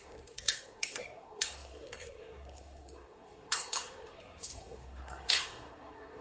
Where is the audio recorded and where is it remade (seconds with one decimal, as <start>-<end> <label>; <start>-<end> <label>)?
0.0-6.2 remade